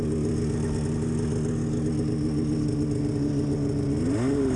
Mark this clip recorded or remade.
recorded